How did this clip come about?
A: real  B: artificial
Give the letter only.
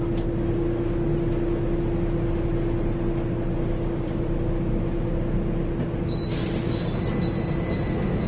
A